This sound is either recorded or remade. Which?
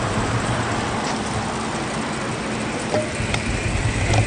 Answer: recorded